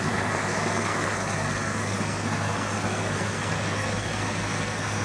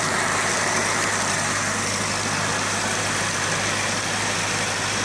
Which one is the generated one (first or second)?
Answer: first